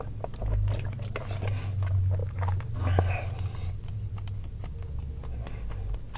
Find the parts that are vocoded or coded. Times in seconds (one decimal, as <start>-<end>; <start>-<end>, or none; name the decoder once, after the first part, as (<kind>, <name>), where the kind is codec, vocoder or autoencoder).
none